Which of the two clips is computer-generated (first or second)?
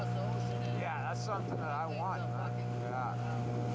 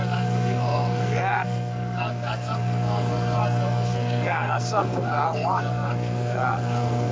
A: second